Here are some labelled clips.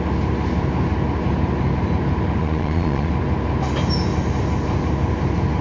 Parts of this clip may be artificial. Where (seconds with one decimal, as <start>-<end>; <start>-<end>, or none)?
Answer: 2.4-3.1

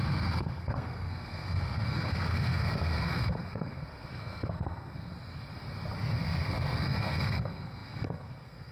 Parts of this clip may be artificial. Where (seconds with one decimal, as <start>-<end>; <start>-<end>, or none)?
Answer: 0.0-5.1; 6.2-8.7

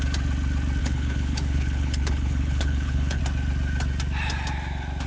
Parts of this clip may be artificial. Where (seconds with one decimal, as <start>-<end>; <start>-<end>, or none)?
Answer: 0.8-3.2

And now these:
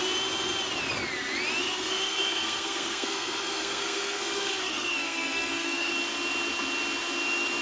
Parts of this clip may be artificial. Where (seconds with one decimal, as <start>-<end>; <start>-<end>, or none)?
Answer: 1.6-5.9

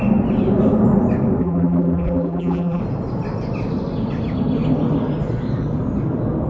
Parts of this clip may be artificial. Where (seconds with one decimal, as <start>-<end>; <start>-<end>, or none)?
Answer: 1.4-2.8